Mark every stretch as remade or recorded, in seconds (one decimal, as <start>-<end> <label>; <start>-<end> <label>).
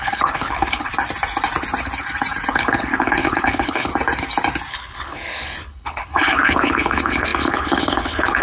0.0-0.9 remade; 0.9-2.5 recorded; 2.5-3.9 remade; 3.9-4.7 recorded; 4.7-8.4 remade